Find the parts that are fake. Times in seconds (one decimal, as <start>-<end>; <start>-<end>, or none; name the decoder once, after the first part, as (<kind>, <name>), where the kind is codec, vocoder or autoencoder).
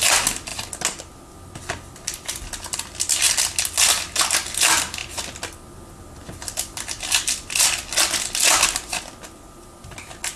none